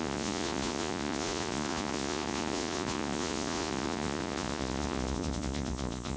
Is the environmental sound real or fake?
fake